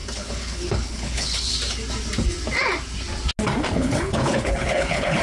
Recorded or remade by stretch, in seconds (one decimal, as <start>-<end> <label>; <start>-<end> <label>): 0.0-1.5 remade; 1.5-3.7 recorded; 3.7-5.2 remade